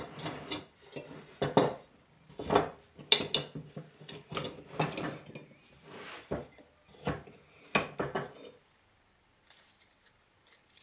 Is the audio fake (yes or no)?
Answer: no